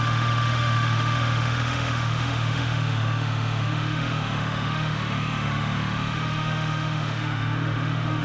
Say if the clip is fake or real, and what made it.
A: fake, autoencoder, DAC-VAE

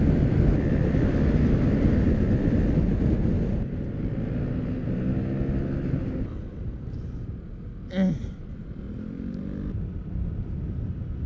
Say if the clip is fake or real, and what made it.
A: real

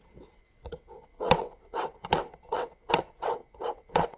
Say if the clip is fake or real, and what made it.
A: fake, vocoder, WaveNeXt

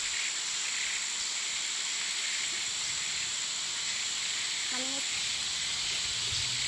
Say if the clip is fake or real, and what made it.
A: real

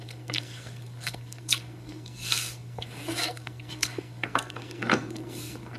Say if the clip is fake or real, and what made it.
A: fake, codec, SNAC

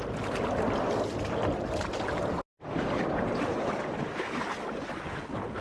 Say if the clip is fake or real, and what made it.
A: real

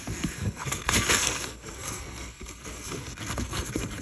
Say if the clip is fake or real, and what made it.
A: fake, codec, SNAC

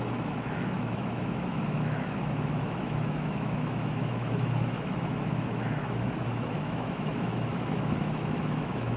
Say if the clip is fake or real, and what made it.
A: fake, autoencoder, DAC-VAE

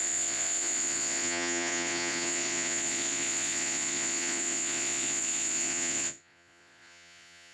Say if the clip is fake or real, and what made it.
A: fake, vocoder, Vocos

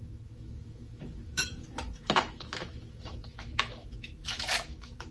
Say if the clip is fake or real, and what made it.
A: fake, autoencoder, DAC-VAE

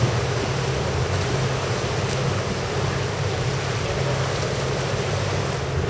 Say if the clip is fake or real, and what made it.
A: real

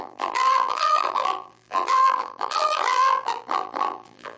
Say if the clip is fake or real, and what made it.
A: fake, vocoder, BigVGAN v2